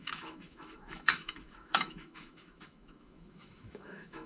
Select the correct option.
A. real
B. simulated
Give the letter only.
B